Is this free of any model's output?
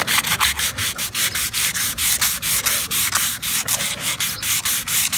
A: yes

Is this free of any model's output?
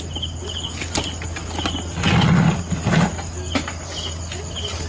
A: yes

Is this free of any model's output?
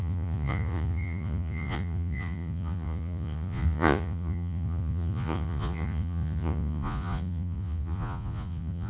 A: no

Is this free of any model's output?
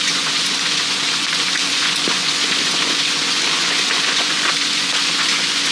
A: no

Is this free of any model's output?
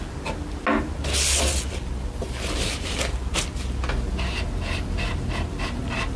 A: yes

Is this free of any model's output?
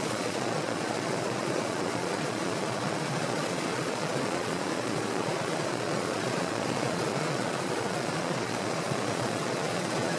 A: no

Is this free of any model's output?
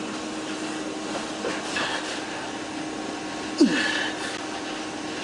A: yes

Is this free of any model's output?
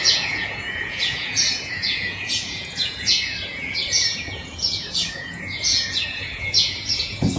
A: no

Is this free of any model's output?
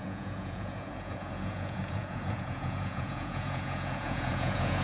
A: no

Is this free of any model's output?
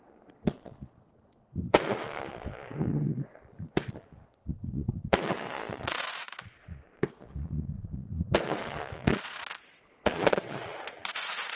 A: no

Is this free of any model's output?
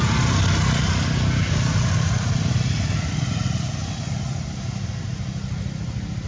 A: yes